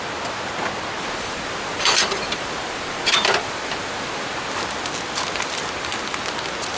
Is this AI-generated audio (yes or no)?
no